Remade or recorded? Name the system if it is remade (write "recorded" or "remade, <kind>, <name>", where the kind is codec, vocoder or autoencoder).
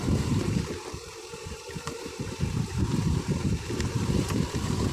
remade, vocoder, BigVGAN v2